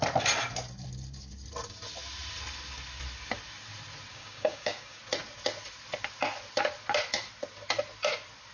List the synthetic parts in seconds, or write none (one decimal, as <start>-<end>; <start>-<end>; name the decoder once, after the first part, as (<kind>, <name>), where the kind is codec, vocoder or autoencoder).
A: 4.1-5.0 (codec, DAC)

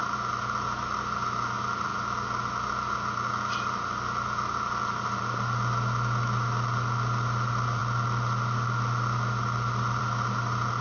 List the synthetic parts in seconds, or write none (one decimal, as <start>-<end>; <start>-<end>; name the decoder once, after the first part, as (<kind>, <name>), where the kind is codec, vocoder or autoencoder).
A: none